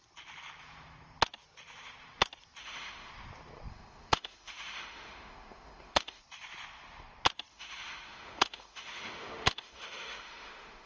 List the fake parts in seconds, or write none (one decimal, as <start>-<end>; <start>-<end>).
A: 2.6-3.1; 3.7-6.2; 7.5-10.9